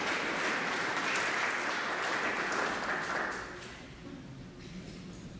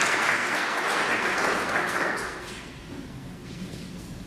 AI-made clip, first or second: second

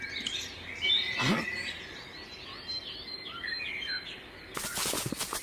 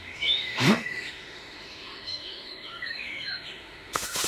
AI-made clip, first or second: second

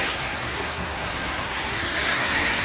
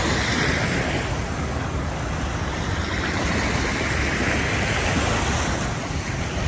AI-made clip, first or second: first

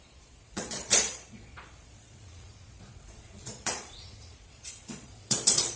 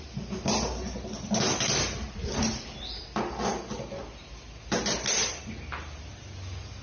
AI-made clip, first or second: first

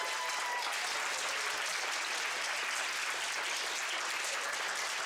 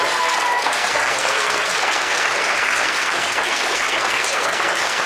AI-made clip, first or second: second